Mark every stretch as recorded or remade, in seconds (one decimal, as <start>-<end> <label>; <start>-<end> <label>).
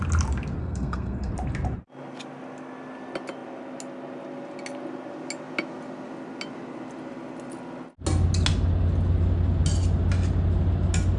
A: 0.0-0.6 recorded; 0.6-1.3 remade; 1.3-11.2 recorded